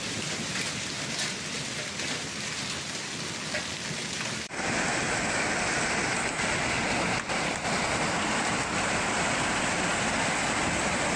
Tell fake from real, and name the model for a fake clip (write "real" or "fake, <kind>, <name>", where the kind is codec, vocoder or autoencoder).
real